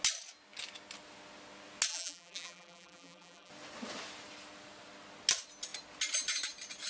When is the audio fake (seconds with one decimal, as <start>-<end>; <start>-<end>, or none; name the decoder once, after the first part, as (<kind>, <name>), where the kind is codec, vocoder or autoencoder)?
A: 1.9-3.5 (vocoder, BigVGAN v2)